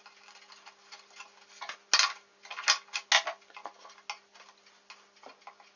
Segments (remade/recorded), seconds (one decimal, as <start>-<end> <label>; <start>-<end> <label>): 0.0-5.8 recorded